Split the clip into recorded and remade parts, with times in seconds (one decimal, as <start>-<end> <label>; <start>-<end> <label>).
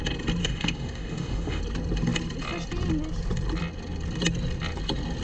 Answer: 0.0-0.4 recorded; 0.4-1.6 remade; 1.6-5.2 recorded